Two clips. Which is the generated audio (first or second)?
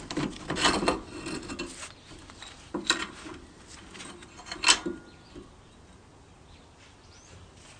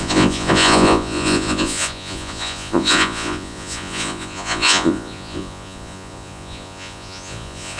second